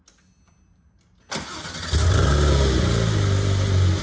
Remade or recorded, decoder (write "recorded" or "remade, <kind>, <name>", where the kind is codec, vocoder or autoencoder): recorded